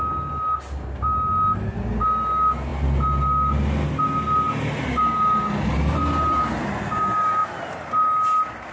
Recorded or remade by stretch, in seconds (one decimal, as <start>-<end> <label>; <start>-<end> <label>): 0.0-8.7 recorded